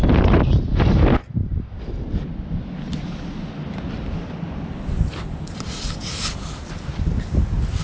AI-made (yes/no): no